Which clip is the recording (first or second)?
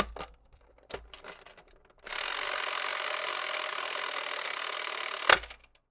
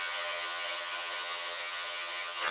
first